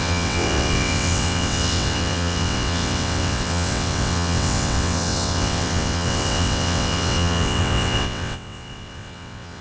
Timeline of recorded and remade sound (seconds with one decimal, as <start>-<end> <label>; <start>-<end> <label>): 0.0-9.6 remade